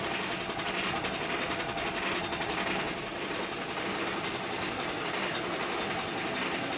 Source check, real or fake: real